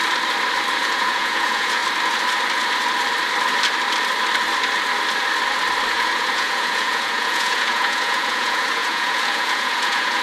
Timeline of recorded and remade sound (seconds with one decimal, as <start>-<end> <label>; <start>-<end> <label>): 0.0-0.8 recorded; 0.8-1.8 remade; 1.8-5.9 recorded; 5.9-10.2 remade